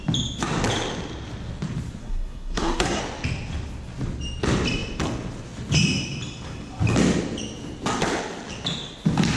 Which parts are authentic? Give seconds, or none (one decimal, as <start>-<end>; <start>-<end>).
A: 0.0-2.0; 3.0-9.4